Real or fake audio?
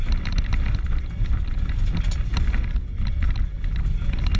real